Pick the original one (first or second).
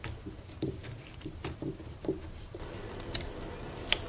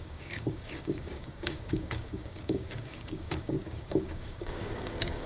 first